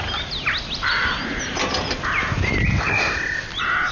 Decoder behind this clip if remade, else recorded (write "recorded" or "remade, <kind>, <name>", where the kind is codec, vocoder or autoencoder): recorded